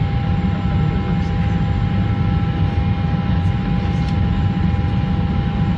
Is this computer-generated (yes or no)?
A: no